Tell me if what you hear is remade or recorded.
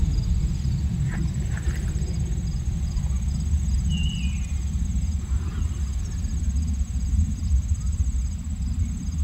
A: recorded